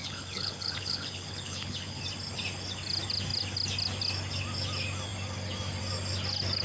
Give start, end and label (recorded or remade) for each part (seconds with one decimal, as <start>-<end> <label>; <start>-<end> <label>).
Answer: 0.0-2.0 remade; 2.0-6.6 recorded